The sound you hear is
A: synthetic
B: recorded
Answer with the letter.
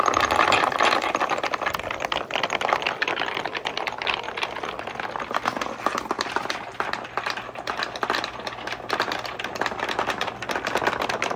B